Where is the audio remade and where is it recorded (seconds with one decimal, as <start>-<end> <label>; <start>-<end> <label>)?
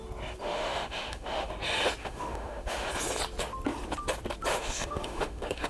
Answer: 0.0-0.4 recorded; 0.4-1.5 remade; 1.5-2.0 recorded; 2.0-2.9 remade; 2.9-4.5 recorded; 4.5-5.7 remade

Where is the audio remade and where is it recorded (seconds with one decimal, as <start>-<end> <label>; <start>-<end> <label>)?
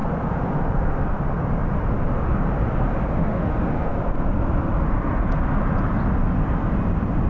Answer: 0.0-3.1 recorded; 3.1-3.9 remade; 3.9-7.3 recorded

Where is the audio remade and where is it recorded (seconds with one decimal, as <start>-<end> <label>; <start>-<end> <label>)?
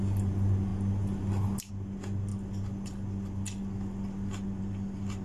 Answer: 0.0-5.2 recorded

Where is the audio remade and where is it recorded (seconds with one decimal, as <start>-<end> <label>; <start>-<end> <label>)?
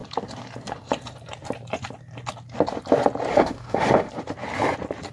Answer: 0.0-3.3 recorded; 3.3-4.1 remade; 4.1-5.1 recorded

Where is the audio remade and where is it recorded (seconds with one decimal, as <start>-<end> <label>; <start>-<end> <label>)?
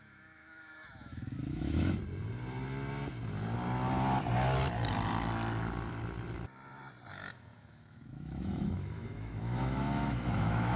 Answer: 0.0-2.0 remade; 2.0-7.1 recorded; 7.1-10.8 remade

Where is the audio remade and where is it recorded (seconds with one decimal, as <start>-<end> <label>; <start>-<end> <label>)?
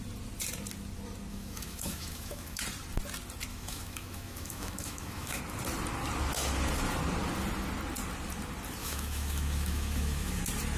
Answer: 0.0-1.3 recorded; 1.3-2.6 remade; 2.6-3.5 recorded; 3.5-5.4 remade; 5.4-8.8 recorded; 8.8-10.4 remade; 10.4-10.8 recorded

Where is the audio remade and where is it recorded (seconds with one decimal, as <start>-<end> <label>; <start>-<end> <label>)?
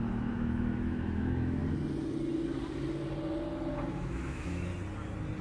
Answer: 0.0-1.6 remade; 1.6-3.9 recorded; 3.9-4.7 remade; 4.7-5.4 recorded